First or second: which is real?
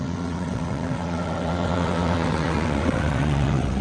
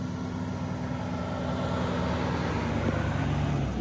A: second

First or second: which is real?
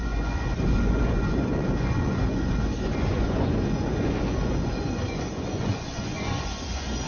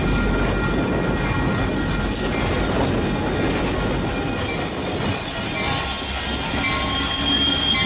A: second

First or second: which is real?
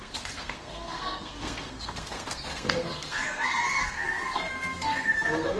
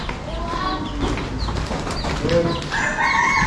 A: second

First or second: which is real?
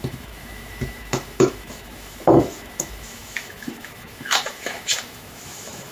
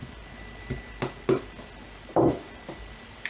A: second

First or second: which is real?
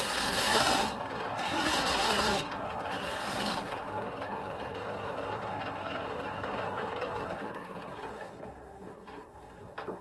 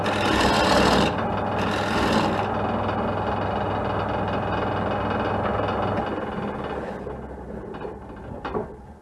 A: second